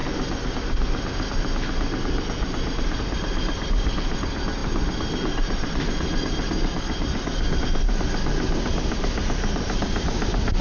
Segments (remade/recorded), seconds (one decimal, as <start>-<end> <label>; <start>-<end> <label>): 0.0-10.6 recorded